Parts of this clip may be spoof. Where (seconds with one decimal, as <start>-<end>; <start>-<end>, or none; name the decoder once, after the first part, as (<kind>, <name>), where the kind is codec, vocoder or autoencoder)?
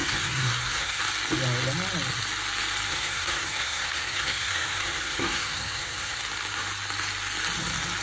0.0-1.0 (codec, SNAC); 2.9-6.2